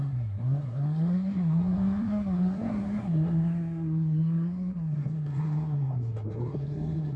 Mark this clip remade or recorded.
remade